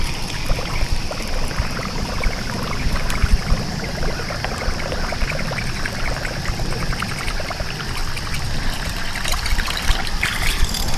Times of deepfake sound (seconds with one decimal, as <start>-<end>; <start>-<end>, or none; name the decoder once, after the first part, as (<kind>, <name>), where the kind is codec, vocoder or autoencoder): 0.0-8.0 (vocoder, BigVGAN v2); 9.5-11.0